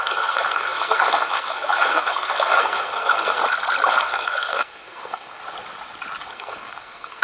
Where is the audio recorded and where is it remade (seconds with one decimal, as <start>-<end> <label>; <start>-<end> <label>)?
0.0-3.4 remade; 3.4-3.9 recorded; 3.9-5.4 remade; 5.4-6.3 recorded; 6.3-7.2 remade